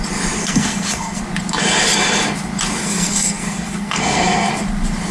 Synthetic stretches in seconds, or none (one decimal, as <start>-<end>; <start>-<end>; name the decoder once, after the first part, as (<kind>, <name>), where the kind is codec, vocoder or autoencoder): 0.4-1.2 (codec, SNAC); 2.8-4.5